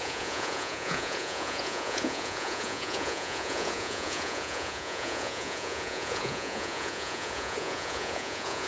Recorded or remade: remade